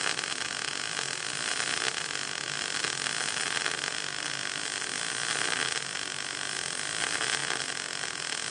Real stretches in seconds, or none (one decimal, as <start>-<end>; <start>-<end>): 0.0-8.5